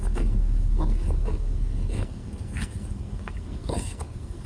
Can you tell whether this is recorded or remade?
remade